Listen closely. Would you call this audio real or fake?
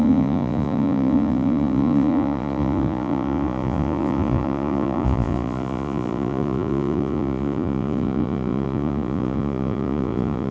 fake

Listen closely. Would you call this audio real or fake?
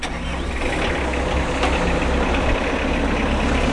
real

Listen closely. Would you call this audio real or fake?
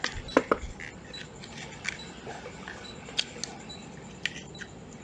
real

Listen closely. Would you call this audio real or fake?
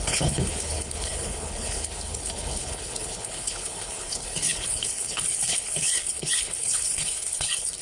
fake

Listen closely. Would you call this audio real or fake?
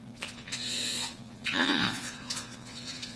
fake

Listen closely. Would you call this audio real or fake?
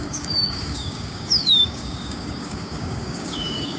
fake